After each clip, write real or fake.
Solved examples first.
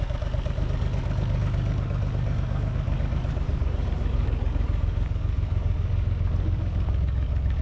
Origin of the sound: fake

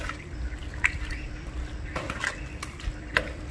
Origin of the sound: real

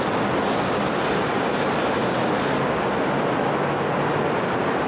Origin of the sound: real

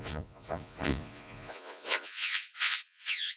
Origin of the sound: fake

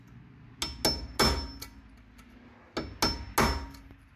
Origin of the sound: real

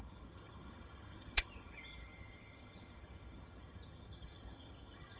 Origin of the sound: fake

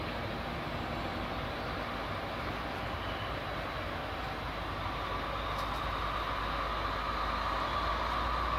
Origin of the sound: real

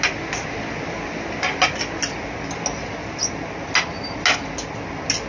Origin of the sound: real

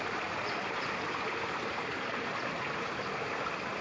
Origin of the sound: real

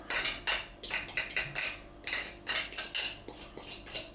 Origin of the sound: real